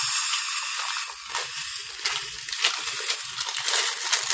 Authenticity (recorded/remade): recorded